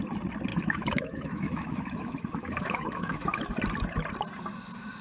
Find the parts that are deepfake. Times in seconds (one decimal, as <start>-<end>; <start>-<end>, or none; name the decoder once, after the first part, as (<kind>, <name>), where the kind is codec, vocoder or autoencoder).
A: 0.5-3.5 (autoencoder, DAC-VAE)